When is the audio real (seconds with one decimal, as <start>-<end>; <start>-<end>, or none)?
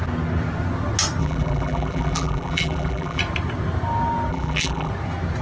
0.0-1.2; 3.2-4.3; 4.9-5.4